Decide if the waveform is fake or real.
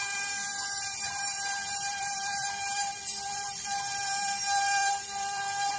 fake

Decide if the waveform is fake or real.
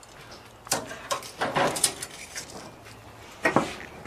real